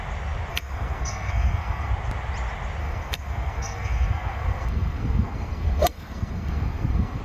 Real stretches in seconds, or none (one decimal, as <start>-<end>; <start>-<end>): 0.0-0.5; 1.9-2.8